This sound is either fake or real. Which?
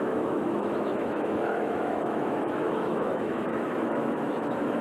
fake